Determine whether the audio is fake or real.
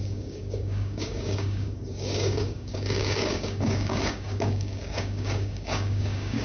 fake